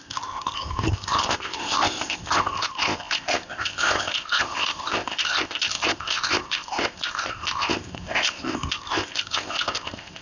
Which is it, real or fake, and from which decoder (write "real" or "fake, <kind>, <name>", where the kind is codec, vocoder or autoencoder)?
fake, codec, ZipCodec